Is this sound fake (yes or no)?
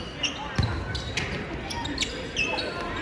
no